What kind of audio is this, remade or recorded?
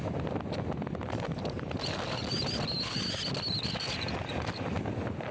recorded